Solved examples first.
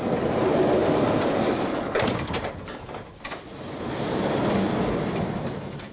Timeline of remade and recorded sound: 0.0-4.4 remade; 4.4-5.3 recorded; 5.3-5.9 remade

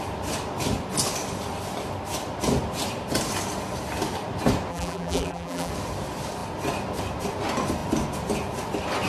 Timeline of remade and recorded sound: 0.0-4.7 recorded; 4.7-5.7 remade; 5.7-9.1 recorded

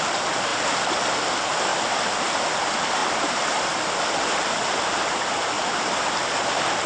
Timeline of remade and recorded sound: 0.0-0.5 recorded; 0.5-1.1 remade; 1.1-1.7 recorded; 1.7-2.4 remade; 2.4-3.0 recorded; 3.0-4.8 remade; 4.8-6.9 recorded

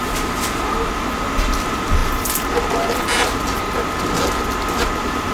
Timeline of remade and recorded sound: 0.0-5.3 recorded

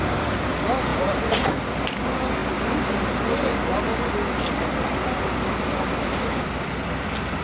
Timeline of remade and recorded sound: 0.0-0.9 recorded; 0.9-1.5 remade; 1.5-7.4 recorded

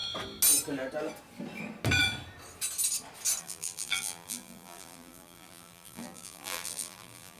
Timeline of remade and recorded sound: 0.0-3.4 recorded; 3.4-7.4 remade

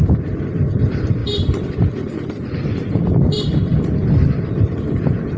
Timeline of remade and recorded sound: 0.0-5.4 remade

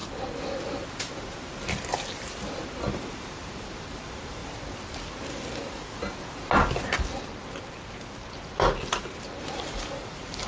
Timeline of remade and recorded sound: 0.0-2.8 recorded; 2.8-4.4 remade; 4.4-9.3 recorded; 9.3-10.5 remade